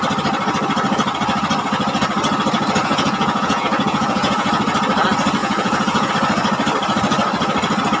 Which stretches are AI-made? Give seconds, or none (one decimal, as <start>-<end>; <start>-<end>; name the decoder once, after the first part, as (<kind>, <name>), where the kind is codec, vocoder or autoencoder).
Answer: 2.8-4.5 (vocoder, Vocos); 5.4-6.1